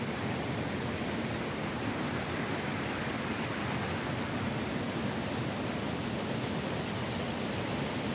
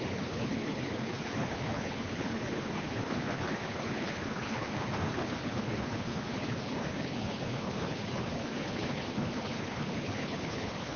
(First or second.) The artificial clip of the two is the second